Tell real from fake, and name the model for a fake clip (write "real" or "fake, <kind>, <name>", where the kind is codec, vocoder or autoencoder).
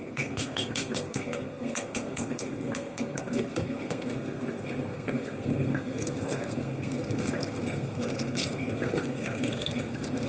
fake, codec, SNAC